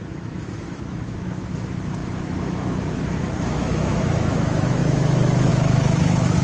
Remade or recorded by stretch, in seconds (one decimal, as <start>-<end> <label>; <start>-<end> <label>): 0.0-6.4 remade